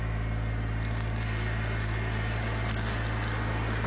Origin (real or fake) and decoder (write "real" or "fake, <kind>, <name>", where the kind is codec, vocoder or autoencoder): real